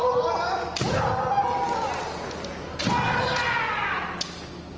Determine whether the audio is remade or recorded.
recorded